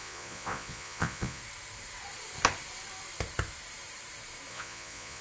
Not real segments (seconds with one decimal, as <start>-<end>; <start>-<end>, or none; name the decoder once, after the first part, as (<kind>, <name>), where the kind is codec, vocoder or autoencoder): 0.0-1.4 (vocoder, Vocos); 4.5-5.2